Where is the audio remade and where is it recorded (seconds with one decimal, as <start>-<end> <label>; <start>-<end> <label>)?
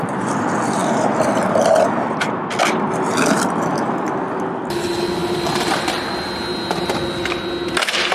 0.0-0.8 recorded; 0.8-1.8 remade; 1.8-5.2 recorded; 5.2-6.1 remade; 6.1-8.1 recorded